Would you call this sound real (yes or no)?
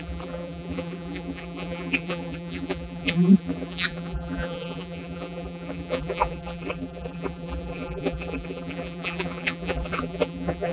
no